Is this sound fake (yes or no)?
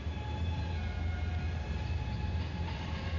no